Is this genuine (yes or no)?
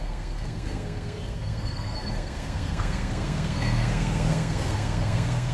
no